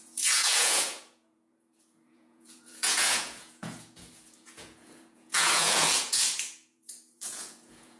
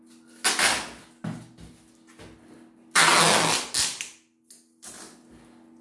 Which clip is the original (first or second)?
second